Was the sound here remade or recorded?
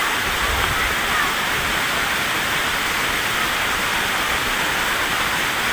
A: recorded